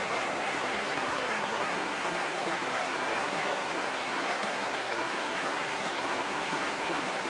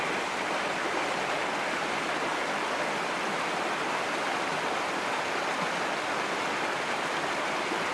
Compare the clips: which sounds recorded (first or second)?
second